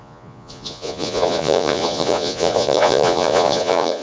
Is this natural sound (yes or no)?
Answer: no